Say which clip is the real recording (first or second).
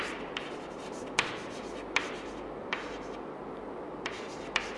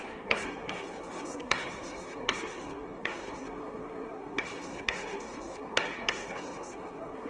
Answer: first